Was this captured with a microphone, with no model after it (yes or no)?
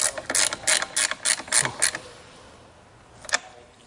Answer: yes